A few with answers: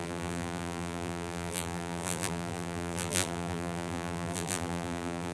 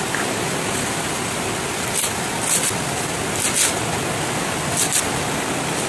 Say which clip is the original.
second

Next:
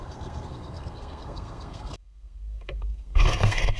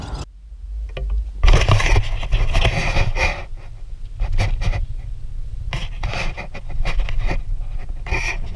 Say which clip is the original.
second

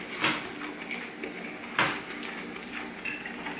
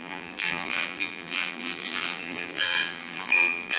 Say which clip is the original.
first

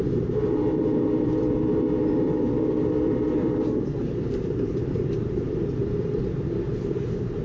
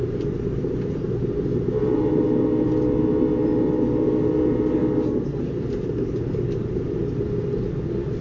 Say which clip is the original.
second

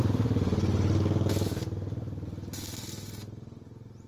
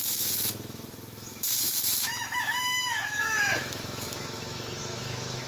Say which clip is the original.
first